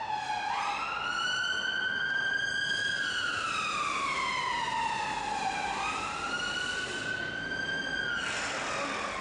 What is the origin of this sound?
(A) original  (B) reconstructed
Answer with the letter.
A